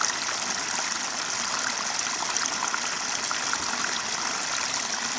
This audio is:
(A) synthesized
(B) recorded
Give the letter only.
B